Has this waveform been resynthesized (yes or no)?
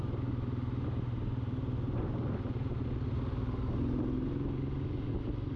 no